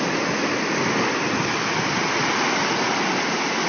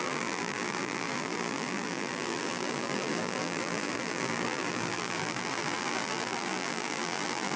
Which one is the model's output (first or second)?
second